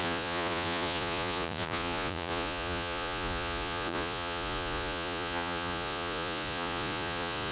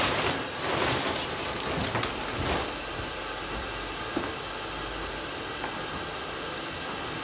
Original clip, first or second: second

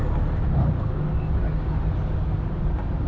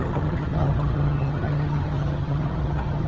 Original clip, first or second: first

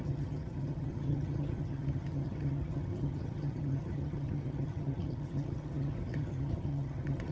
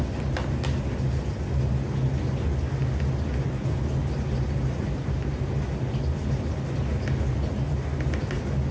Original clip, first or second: second